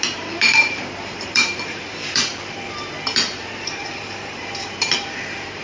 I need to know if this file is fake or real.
fake